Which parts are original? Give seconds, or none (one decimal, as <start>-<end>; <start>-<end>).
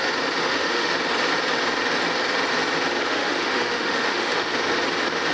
0.0-0.4; 0.9-3.1; 4.5-5.3